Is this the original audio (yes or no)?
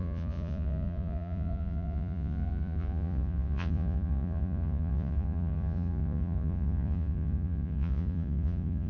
no